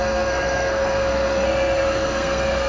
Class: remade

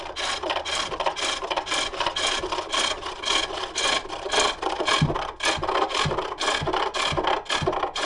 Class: recorded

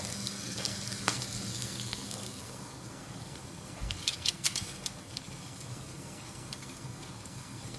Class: remade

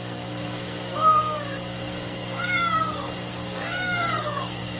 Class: remade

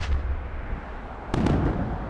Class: recorded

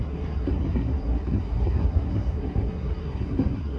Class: remade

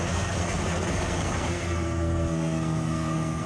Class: remade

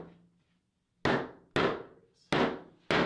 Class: recorded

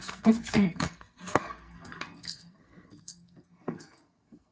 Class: remade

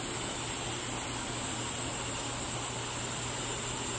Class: recorded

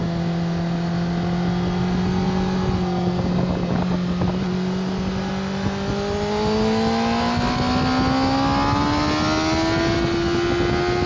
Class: recorded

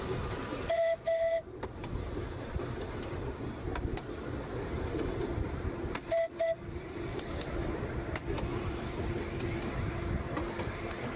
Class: recorded